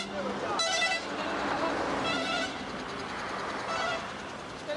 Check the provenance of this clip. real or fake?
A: real